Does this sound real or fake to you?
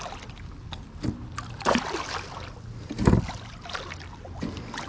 real